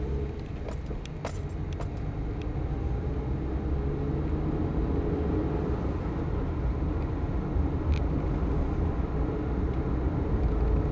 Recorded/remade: recorded